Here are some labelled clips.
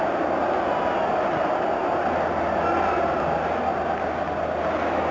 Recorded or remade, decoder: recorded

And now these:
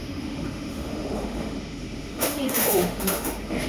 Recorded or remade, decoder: remade, autoencoder, DAC-VAE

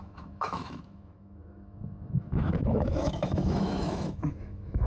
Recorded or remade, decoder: remade, autoencoder, DAC-VAE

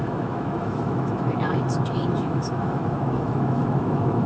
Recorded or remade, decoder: remade, autoencoder, DAC-VAE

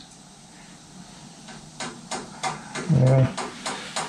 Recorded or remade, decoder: recorded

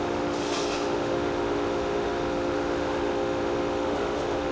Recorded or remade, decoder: remade, autoencoder, DAC-VAE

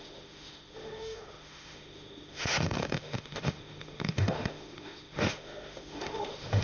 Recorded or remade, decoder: remade, autoencoder, DAC-VAE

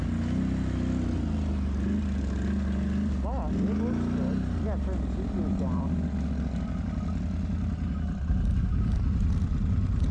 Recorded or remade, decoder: recorded